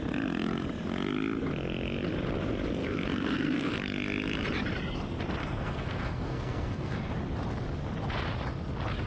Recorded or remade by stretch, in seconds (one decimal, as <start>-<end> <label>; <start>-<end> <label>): 0.0-2.8 recorded; 2.8-3.7 remade; 3.7-5.4 recorded; 5.4-7.1 remade; 7.1-9.1 recorded